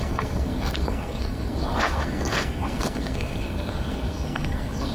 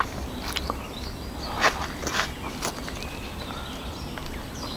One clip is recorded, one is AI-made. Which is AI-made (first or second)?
first